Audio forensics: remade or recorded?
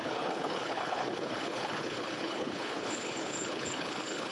remade